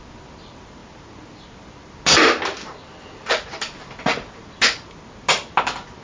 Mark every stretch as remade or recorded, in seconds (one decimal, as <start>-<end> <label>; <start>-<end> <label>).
0.0-6.0 recorded